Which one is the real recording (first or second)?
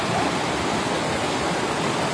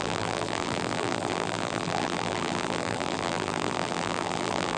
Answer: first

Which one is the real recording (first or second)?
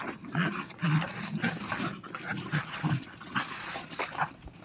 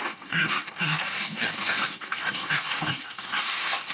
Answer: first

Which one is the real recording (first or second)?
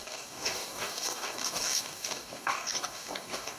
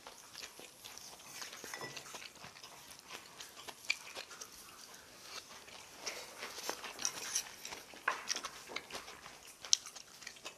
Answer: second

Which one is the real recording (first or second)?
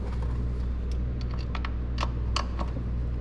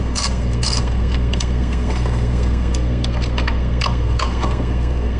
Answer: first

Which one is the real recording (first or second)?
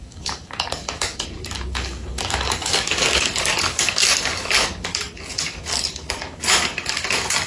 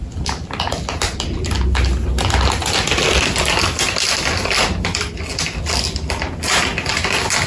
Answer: second